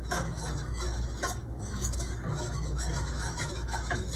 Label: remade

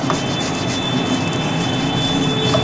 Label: recorded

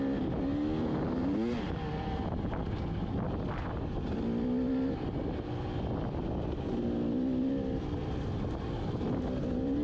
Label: recorded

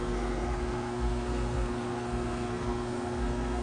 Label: remade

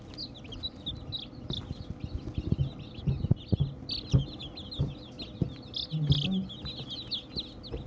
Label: recorded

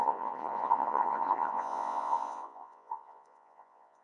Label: remade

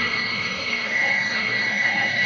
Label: remade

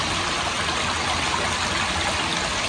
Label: recorded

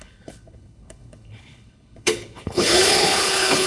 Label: remade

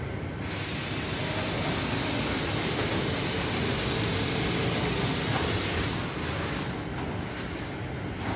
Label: recorded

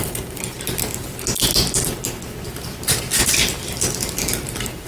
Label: recorded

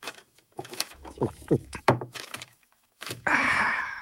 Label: remade